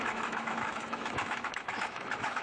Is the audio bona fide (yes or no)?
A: no